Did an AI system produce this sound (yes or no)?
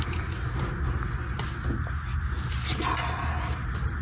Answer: no